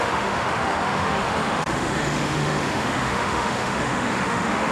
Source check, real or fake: fake